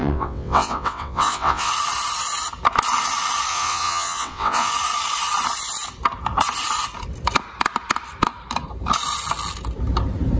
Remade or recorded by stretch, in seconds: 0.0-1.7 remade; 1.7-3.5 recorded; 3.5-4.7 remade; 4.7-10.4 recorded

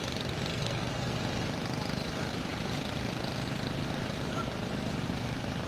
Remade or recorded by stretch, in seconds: 0.0-0.5 recorded; 0.5-1.2 remade; 1.2-5.7 recorded

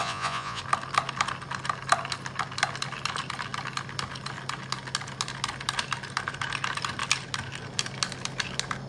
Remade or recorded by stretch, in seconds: 0.0-0.6 remade; 0.6-8.9 recorded

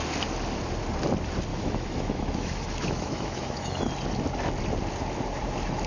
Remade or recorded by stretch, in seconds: 0.0-1.5 recorded; 1.5-3.9 remade; 3.9-5.9 recorded

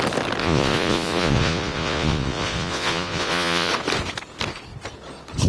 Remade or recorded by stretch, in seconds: 0.0-0.4 recorded; 0.4-3.7 remade; 3.7-5.5 recorded

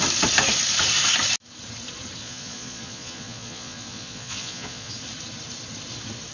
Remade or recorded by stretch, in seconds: 0.0-2.2 recorded; 2.2-4.9 remade; 4.9-6.3 recorded

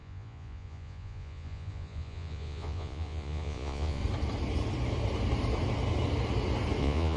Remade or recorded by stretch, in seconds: 0.0-4.0 remade; 4.0-6.8 recorded; 6.8-7.2 remade

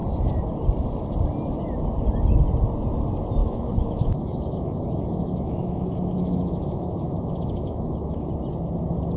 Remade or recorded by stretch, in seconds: 0.0-3.4 recorded; 3.4-8.3 remade; 8.3-9.2 recorded